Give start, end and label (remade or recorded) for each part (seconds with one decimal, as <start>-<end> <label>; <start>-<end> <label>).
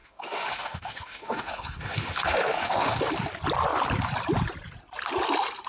0.0-3.0 remade; 3.0-5.7 recorded